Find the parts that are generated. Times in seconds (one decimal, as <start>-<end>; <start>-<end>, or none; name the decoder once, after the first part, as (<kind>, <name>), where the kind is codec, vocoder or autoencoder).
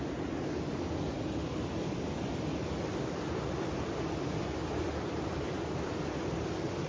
1.4-2.1 (vocoder, BigVGAN v2); 2.5-6.1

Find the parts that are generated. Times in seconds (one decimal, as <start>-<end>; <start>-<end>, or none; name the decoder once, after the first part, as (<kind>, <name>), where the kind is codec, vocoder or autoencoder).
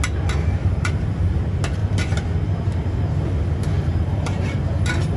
0.6-1.4 (vocoder, BigVGAN v2); 3.9-4.7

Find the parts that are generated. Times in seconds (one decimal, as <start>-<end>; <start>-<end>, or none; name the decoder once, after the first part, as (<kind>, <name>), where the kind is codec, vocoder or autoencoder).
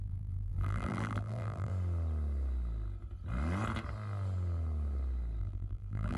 0.0-1.7 (vocoder, BigVGAN v2); 5.4-6.2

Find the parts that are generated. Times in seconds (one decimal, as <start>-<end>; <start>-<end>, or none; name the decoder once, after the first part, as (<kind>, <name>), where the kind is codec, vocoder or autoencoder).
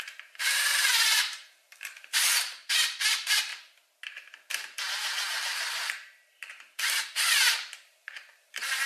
0.0-3.5 (vocoder, BigVGAN v2); 5.4-8.9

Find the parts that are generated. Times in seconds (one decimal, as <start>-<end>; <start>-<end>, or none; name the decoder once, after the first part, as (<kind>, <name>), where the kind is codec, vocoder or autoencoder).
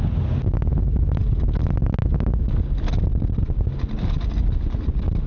none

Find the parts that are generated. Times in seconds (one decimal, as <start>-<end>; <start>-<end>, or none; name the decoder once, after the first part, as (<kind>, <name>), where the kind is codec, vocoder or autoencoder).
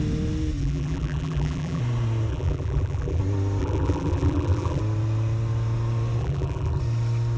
0.6-1.8 (vocoder, BigVGAN v2); 2.3-3.2; 3.6-4.8; 6.2-6.8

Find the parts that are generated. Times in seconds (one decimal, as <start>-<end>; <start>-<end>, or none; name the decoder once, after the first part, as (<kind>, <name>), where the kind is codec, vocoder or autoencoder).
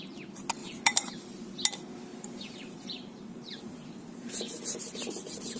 0.6-1.1 (vocoder, BigVGAN v2); 2.1-3.6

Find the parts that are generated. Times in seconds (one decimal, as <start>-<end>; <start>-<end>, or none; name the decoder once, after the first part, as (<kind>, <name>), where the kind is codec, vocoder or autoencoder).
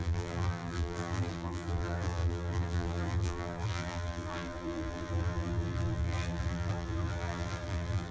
0.0-8.1 (vocoder, BigVGAN v2)